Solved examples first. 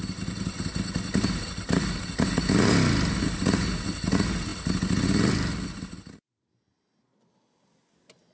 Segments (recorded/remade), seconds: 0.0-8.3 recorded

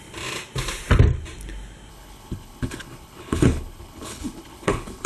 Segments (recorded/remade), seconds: 0.0-1.9 recorded; 1.9-5.1 remade

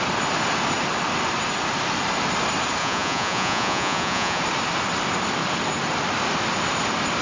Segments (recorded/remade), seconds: 0.0-2.8 recorded; 2.8-4.4 remade; 4.4-7.2 recorded

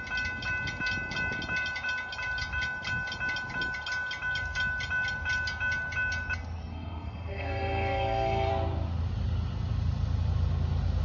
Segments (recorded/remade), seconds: 0.0-6.6 recorded; 6.6-8.5 remade; 8.5-11.0 recorded

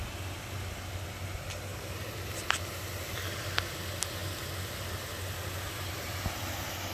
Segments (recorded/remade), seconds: 0.0-1.7 recorded; 1.7-2.7 remade; 2.7-6.9 recorded

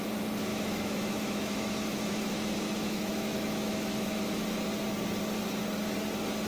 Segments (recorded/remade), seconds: 0.0-0.5 recorded; 0.5-4.4 remade; 4.4-6.5 recorded

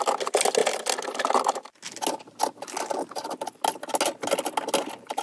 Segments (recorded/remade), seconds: 0.0-5.2 recorded